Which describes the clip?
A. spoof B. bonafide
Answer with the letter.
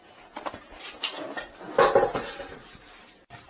B